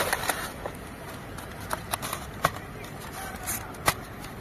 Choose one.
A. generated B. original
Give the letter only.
B